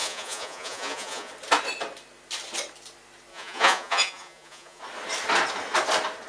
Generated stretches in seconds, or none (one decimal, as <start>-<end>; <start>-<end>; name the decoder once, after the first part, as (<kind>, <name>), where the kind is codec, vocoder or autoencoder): 0.0-1.3 (vocoder, Vocos); 3.3-4.8

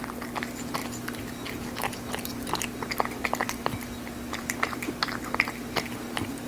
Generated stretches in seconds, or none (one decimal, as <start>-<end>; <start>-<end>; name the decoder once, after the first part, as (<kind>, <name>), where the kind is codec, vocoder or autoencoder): none

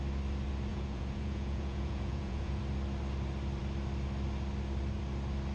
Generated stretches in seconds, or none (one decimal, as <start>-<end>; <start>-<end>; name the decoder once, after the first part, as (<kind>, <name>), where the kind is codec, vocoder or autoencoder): 0.7-2.6 (vocoder, Vocos)

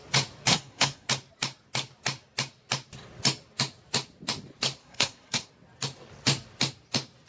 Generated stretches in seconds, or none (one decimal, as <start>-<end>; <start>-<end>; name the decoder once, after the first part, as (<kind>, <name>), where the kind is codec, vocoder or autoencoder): 0.5-1.1 (codec, SNAC); 4.8-5.5

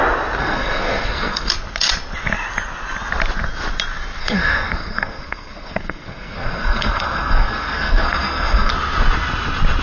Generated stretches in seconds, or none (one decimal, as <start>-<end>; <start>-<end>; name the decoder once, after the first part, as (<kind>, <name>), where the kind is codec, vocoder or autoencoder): 0.4-1.5 (codec, SNAC); 4.2-8.7

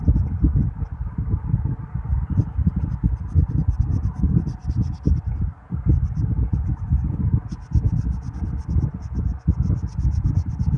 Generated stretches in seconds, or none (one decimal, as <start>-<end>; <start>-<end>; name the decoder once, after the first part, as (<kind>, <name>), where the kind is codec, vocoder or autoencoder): none